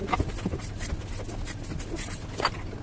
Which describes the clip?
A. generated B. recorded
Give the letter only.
B